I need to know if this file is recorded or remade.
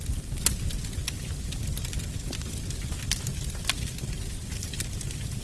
recorded